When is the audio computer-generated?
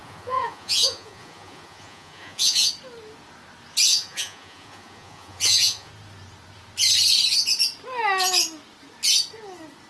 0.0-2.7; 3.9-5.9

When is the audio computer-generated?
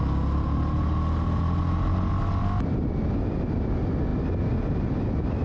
none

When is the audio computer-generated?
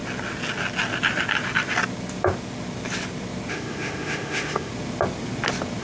3.5-4.7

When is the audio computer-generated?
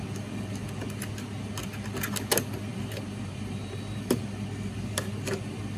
2.7-4.3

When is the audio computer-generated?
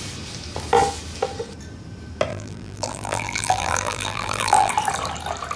2.3-4.7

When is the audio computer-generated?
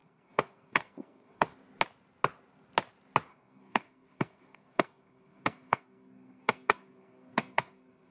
0.0-1.5; 3.3-8.1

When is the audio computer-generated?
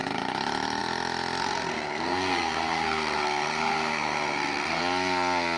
1.4-4.8